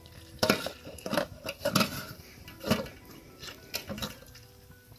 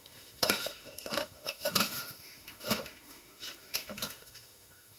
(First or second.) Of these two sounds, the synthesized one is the second